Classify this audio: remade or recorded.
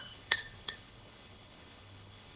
remade